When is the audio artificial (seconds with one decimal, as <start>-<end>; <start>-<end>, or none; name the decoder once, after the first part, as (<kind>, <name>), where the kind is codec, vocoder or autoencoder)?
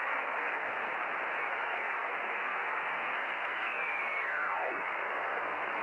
0.0-0.9 (codec, SNAC); 1.4-5.8